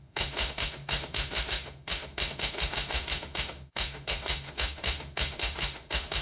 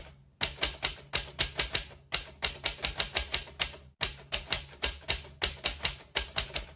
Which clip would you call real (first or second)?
second